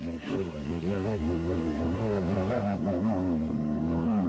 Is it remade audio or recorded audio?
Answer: remade